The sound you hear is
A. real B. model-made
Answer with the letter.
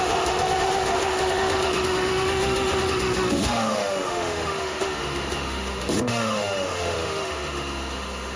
B